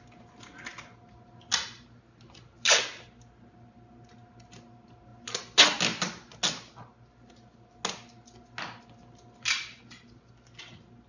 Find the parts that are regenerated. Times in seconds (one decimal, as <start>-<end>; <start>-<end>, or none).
none